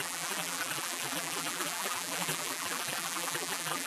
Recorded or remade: remade